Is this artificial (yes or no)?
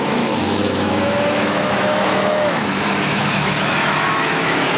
yes